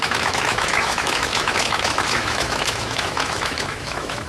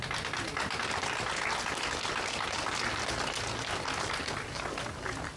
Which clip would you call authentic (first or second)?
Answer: second